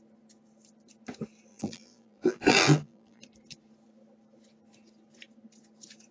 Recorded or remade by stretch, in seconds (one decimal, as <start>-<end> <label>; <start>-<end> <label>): 0.0-1.5 recorded; 1.5-3.2 remade; 3.2-6.1 recorded